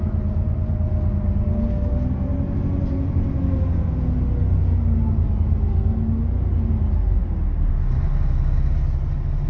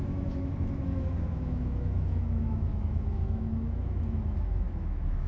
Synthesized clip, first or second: second